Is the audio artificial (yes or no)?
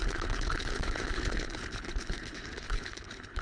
yes